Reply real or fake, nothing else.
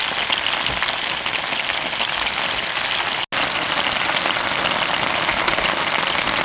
real